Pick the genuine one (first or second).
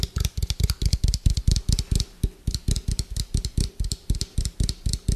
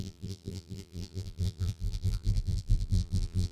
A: first